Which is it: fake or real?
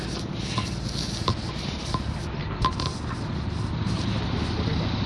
real